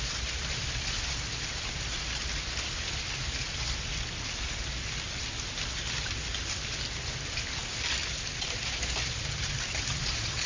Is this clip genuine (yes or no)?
yes